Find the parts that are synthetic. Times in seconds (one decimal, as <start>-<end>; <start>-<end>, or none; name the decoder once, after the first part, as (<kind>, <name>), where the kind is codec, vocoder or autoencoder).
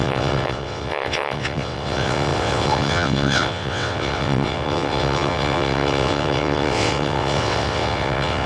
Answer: 0.0-8.5 (vocoder, WaveNeXt)